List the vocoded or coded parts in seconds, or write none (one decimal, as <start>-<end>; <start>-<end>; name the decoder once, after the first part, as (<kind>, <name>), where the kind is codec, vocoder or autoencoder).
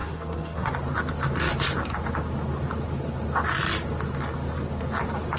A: 0.0-0.7 (codec, SNAC)